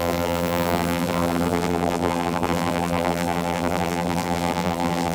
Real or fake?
fake